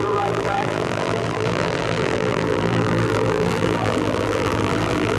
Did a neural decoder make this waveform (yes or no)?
yes